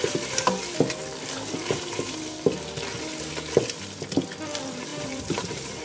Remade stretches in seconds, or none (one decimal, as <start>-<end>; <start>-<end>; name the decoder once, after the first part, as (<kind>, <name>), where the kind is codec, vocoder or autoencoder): 4.9-5.8 (vocoder, BigVGAN v2)